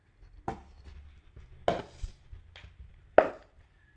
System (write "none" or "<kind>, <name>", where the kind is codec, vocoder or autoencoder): none